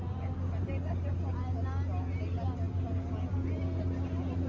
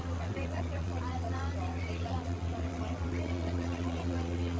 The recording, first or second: first